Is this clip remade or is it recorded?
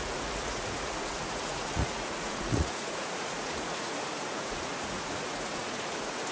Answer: remade